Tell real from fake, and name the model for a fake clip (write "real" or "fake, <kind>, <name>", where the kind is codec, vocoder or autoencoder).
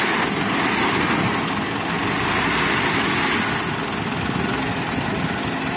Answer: real